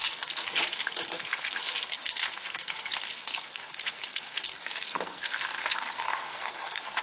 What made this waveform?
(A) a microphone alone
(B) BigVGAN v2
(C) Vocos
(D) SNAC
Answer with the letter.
D